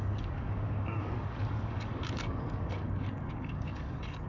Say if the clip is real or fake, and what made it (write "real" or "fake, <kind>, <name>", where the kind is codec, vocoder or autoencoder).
fake, codec, DAC